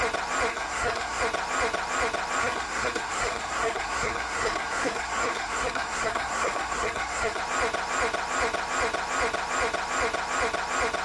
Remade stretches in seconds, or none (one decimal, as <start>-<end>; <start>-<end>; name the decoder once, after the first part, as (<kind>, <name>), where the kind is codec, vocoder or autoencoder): 0.5-1.2 (codec, SNAC); 2.4-7.4